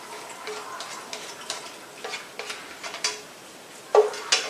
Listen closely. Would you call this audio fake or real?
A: real